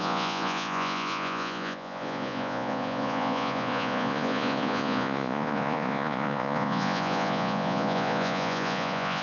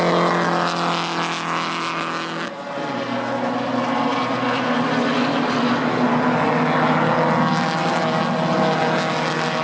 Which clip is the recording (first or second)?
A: second